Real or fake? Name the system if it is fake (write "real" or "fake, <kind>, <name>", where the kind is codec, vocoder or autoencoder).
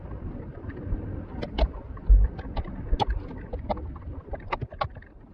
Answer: real